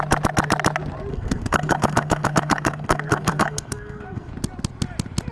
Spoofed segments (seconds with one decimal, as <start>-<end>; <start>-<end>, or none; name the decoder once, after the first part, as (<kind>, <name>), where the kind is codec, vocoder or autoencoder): 1.1-4.3 (codec, SNAC)